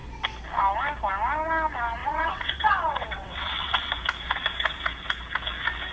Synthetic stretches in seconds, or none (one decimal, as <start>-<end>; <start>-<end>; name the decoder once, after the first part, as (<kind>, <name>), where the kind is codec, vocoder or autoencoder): 2.0-3.9 (vocoder, WaveNeXt)